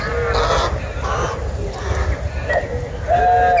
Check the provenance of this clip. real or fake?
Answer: real